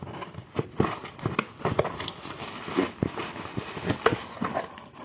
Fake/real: real